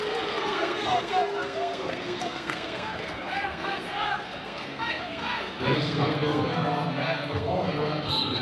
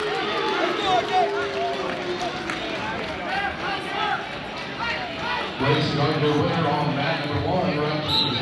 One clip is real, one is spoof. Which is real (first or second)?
second